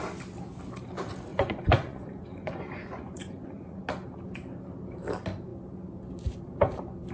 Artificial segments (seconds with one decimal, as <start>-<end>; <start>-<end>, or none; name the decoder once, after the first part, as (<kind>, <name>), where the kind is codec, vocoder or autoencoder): 1.3-3.8 (vocoder, Vocos)